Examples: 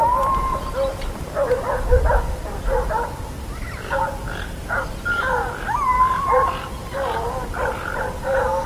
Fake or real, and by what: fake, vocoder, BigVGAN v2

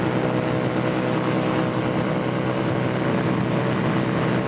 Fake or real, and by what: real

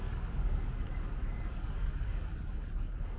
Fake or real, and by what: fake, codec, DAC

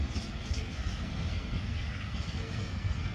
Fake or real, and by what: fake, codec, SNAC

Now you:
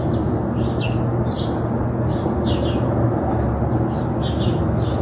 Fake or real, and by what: real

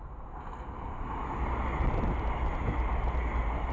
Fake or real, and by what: real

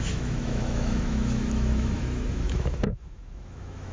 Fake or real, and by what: fake, autoencoder, DAC-VAE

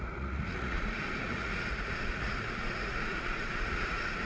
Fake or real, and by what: fake, vocoder, Vocos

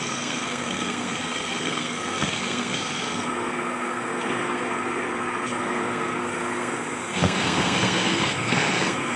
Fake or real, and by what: fake, codec, SNAC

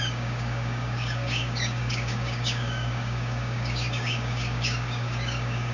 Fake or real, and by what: fake, codec, DAC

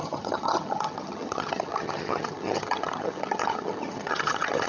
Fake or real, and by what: fake, vocoder, HiFi-GAN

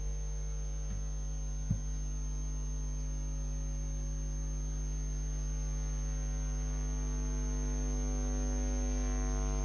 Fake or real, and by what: real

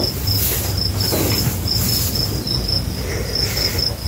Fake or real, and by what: real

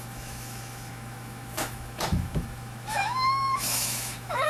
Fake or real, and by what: fake, autoencoder, DAC-VAE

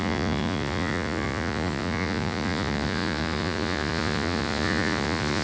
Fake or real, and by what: fake, vocoder, Vocos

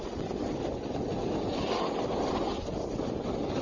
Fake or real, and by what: real